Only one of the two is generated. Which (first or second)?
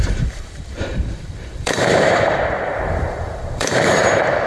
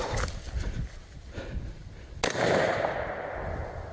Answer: first